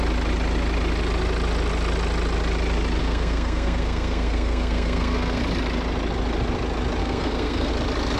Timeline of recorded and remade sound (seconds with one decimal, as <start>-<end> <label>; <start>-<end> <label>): 0.0-3.0 recorded; 3.0-5.4 remade; 5.4-7.0 recorded; 7.0-7.7 remade; 7.7-8.2 recorded